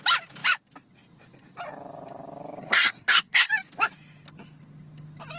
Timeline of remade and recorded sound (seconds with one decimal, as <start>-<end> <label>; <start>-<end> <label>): 0.0-2.6 recorded; 2.6-3.5 remade; 3.5-5.4 recorded